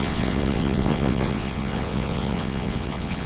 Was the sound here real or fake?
fake